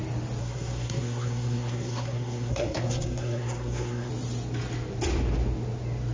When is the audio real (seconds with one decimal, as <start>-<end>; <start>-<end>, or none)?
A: 0.0-0.4; 4.1-6.1